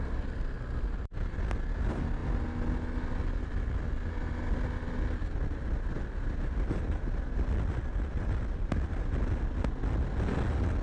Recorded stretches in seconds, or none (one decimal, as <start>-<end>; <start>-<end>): 0.0-10.8